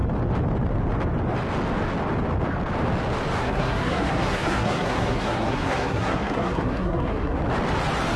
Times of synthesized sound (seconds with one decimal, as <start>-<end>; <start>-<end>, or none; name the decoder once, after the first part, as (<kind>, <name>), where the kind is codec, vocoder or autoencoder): 3.4-7.4 (codec, SNAC)